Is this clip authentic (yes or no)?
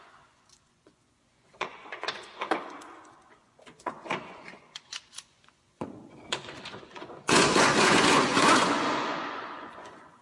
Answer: no